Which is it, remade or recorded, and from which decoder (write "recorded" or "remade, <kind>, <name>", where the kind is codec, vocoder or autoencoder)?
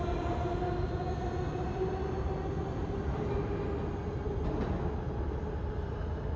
recorded